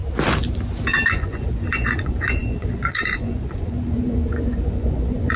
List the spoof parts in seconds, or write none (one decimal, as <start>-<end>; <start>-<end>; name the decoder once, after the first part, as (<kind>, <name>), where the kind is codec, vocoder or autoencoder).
1.1-5.4 (vocoder, Vocos)